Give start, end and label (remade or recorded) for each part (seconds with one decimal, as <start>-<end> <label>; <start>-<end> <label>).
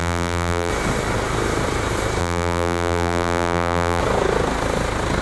0.0-0.7 remade; 0.7-2.2 recorded; 2.2-4.0 remade; 4.0-5.2 recorded